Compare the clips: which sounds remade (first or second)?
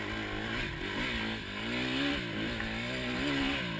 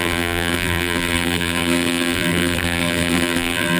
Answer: second